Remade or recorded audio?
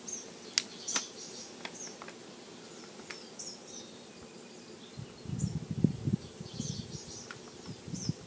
recorded